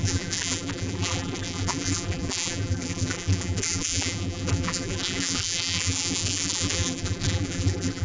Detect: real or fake fake